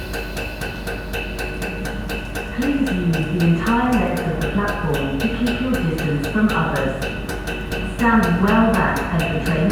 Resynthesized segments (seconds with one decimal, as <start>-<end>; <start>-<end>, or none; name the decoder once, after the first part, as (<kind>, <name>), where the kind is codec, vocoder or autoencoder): none